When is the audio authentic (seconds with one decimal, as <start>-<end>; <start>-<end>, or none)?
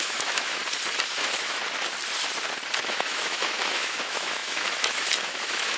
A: 0.6-1.1; 1.6-2.8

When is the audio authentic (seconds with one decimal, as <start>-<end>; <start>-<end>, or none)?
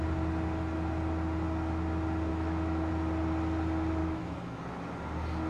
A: 0.0-2.3; 2.9-4.0; 4.6-5.5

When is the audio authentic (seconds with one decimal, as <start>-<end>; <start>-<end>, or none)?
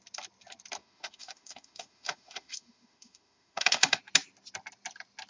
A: 0.0-0.8; 4.0-5.3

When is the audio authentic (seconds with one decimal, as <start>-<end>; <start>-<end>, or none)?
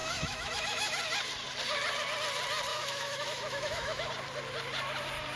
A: 1.0-2.7; 4.1-5.4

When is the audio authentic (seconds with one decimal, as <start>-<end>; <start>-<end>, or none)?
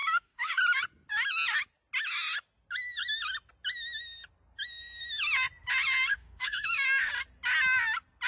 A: 0.6-6.1; 7.1-8.3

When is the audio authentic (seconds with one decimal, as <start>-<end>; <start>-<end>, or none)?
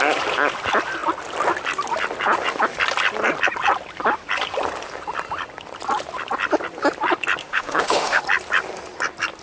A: 0.0-7.4; 8.2-9.4